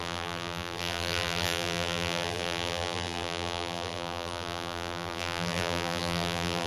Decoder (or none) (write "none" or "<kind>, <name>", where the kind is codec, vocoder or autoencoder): vocoder, BigVGAN v2